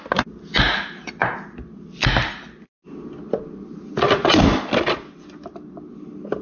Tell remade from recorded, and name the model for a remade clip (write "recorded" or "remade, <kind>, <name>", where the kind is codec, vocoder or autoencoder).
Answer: recorded